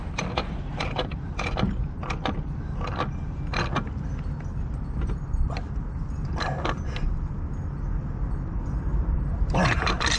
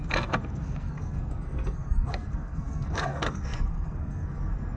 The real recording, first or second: first